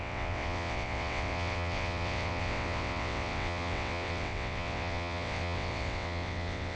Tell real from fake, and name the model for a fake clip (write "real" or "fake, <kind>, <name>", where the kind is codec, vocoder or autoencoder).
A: fake, vocoder, WaveNeXt